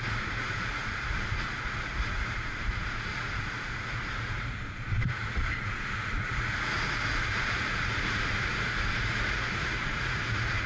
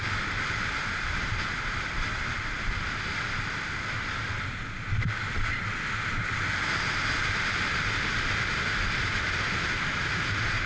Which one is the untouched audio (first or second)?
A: second